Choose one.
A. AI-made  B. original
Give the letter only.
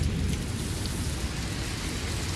B